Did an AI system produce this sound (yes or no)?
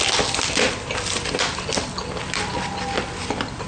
no